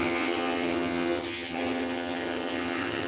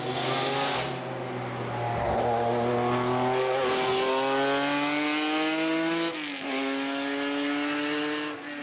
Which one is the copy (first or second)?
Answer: first